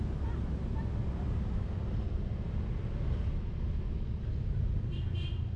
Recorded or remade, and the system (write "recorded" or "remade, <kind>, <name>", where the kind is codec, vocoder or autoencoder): recorded